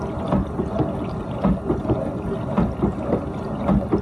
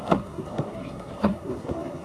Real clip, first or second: first